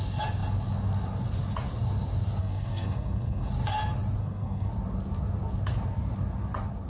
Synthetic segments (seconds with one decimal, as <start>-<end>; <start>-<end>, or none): 2.4-3.5; 4.2-4.7